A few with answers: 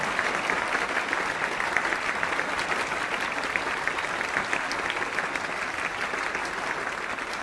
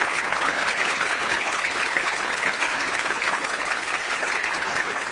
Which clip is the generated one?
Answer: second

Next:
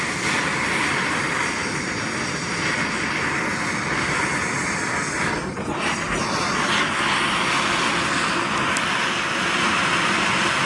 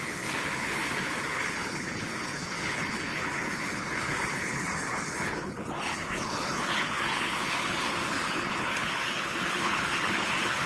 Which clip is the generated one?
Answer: second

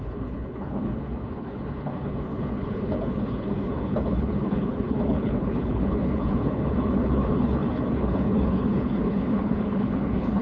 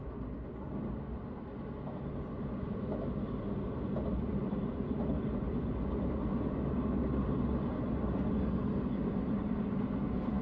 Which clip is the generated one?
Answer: first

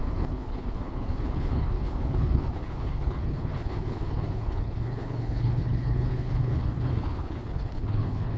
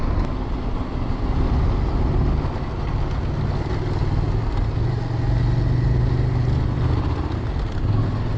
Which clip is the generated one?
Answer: first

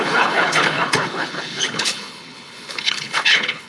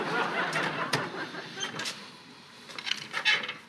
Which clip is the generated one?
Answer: first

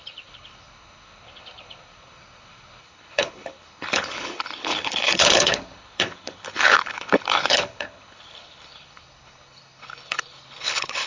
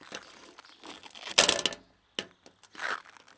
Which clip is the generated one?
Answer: first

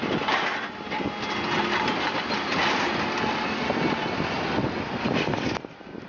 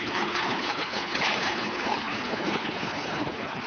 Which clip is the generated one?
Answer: second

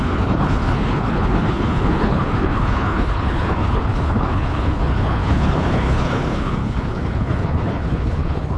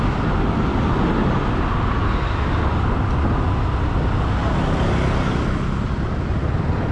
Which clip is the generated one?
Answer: first